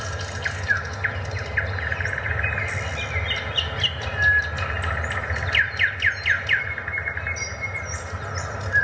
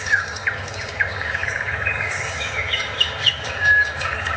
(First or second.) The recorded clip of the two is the first